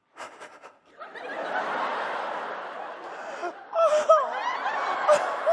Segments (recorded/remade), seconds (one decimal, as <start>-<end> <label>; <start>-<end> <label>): 0.0-5.5 recorded